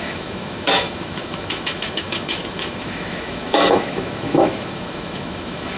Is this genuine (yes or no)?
no